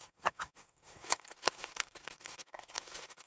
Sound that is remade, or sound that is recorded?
remade